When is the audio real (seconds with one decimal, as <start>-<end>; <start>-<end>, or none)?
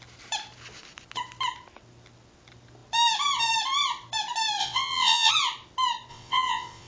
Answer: 0.0-4.6; 5.3-6.1